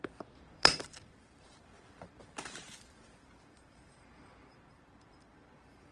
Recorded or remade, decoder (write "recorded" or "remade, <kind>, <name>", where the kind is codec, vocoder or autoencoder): remade, vocoder, BigVGAN v2